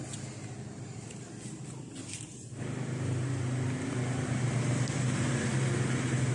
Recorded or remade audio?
recorded